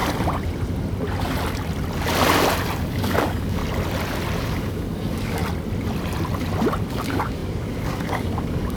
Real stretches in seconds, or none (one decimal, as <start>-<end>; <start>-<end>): 0.0-2.9; 3.6-4.4; 5.4-6.9